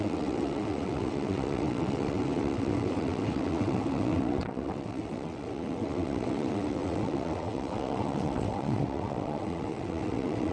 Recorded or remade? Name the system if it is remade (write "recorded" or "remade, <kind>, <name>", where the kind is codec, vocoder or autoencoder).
remade, vocoder, WaveNeXt